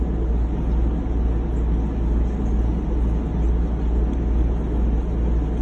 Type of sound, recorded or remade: recorded